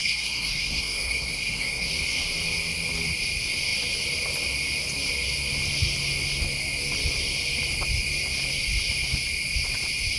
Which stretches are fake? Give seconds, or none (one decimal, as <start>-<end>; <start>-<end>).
0.0-1.9